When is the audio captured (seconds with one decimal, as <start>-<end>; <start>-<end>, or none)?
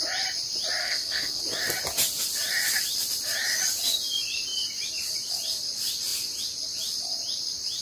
0.0-0.8; 1.4-7.8